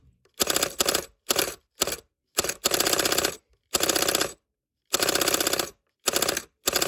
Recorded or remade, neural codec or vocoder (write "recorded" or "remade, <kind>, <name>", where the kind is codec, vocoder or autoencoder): remade, vocoder, BigVGAN v2